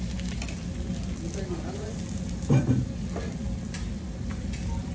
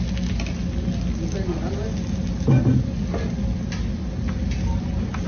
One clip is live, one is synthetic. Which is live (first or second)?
second